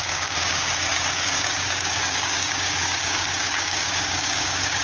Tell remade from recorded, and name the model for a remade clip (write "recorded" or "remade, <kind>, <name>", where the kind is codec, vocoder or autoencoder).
remade, codec, DAC